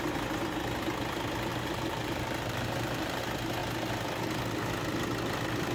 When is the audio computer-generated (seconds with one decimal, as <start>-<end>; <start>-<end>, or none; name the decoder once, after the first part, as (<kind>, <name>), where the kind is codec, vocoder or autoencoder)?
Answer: 1.5-3.2 (vocoder, BigVGAN v2)